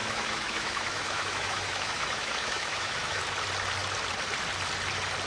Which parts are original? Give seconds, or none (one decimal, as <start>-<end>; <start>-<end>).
3.2-5.3